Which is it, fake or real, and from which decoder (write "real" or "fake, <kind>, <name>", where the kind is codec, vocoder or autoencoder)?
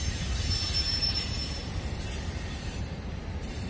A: fake, vocoder, BigVGAN v2